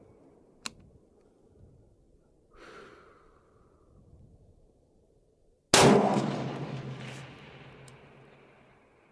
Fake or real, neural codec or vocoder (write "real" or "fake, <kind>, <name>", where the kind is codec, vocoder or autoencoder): real